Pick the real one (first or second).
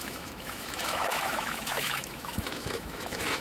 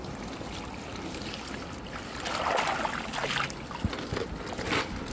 second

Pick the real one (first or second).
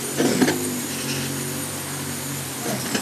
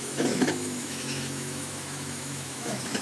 first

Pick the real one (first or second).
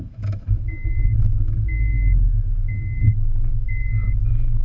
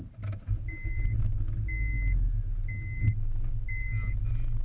second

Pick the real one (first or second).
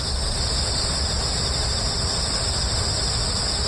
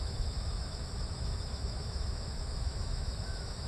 first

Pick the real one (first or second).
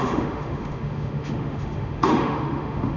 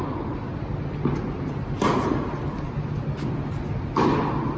second